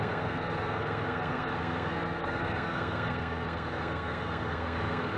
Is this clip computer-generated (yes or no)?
yes